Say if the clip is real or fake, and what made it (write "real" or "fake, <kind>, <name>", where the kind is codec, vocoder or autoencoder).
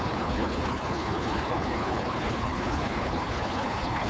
fake, codec, HILCodec